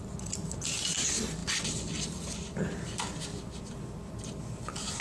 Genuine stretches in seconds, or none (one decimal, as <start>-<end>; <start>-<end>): 0.0-5.0